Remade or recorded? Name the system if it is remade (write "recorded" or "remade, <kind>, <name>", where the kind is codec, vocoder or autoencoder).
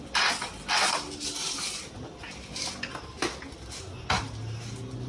recorded